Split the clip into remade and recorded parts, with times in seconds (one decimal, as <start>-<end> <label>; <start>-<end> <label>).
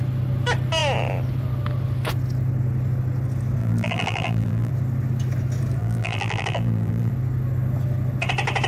0.0-3.6 recorded; 3.6-4.7 remade; 4.7-5.8 recorded; 5.8-7.1 remade; 7.1-8.7 recorded